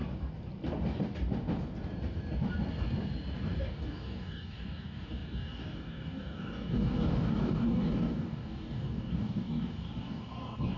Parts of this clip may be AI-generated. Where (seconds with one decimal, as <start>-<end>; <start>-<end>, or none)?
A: 3.6-10.8